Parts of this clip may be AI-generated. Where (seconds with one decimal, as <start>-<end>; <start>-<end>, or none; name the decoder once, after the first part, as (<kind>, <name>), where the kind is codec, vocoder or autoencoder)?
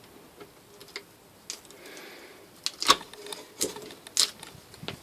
none